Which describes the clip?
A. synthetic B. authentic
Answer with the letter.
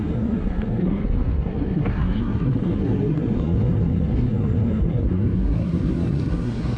A